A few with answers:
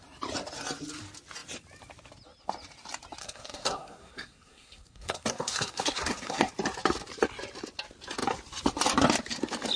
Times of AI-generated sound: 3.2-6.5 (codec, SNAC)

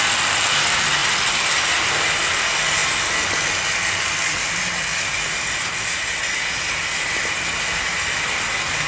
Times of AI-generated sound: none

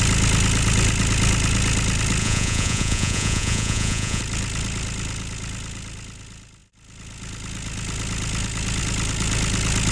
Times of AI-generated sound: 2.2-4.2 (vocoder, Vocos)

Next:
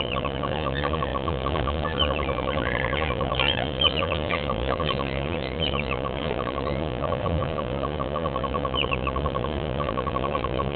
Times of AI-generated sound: 0.0-10.8 (vocoder, Vocos)